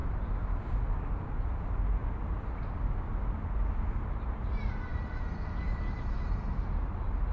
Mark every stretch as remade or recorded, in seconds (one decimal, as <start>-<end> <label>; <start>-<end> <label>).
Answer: 0.0-7.3 recorded